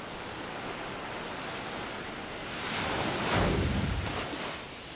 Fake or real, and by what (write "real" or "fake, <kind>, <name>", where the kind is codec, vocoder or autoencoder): real